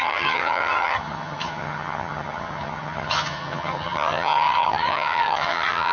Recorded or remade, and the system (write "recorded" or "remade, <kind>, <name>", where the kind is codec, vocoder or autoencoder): remade, vocoder, HiFi-GAN